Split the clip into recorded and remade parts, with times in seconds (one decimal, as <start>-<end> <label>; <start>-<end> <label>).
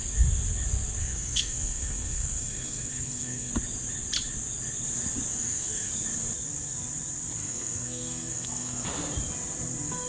0.0-1.0 recorded; 1.0-3.5 remade; 3.5-5.3 recorded; 5.3-5.9 remade; 5.9-7.4 recorded; 7.4-8.9 remade; 8.9-10.1 recorded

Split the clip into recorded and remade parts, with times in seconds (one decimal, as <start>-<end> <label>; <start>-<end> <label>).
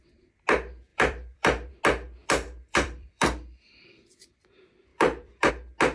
0.0-0.9 recorded; 0.9-1.7 remade; 1.7-2.2 recorded; 2.2-3.6 remade; 3.6-4.9 recorded; 4.9-5.5 remade; 5.5-5.9 recorded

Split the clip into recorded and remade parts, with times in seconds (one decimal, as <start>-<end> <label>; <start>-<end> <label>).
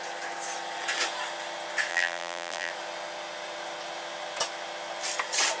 0.0-1.9 recorded; 1.9-2.7 remade; 2.7-5.6 recorded